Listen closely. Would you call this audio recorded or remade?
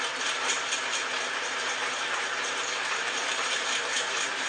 remade